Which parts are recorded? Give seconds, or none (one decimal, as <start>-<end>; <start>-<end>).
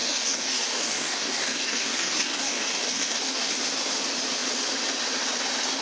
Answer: 3.5-5.8